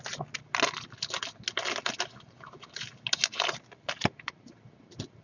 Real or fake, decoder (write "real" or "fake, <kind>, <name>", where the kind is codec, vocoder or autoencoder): real